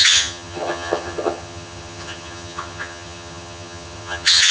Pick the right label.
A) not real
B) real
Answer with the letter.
A